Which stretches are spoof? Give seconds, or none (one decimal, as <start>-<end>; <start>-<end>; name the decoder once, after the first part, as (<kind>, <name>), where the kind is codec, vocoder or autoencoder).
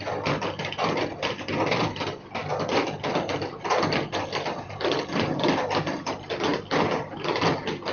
none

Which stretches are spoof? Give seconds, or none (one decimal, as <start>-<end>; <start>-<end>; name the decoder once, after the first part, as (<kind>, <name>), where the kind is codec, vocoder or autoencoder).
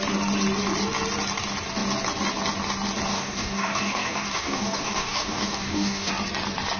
3.1-6.1 (codec, DAC)